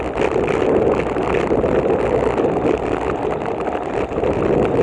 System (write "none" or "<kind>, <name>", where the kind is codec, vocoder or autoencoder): none